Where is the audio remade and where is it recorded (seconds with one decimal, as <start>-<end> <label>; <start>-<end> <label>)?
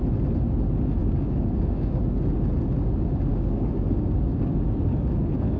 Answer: 0.0-1.0 recorded; 1.0-2.0 remade; 2.0-3.3 recorded; 3.3-4.5 remade; 4.5-5.6 recorded